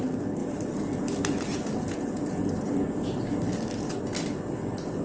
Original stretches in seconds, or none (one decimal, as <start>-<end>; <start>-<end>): 0.0-1.5; 2.7-5.0